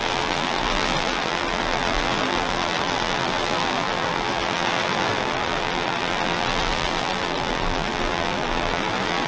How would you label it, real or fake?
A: fake